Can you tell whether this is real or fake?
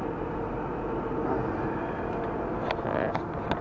real